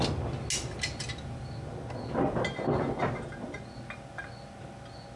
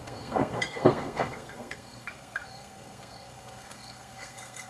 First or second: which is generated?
second